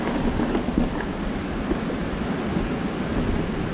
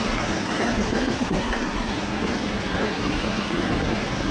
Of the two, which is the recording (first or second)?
first